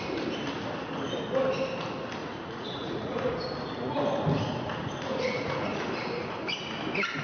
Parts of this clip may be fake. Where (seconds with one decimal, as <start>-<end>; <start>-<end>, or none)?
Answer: 2.2-3.3; 5.1-5.8